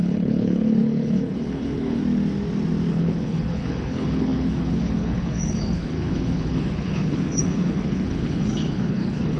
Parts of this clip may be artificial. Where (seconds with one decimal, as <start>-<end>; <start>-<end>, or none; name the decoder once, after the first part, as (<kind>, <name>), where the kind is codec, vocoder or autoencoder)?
0.0-2.0 (codec, HILCodec); 2.9-9.4